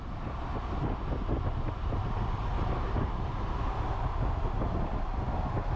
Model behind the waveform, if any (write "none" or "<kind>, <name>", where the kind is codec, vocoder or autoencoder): none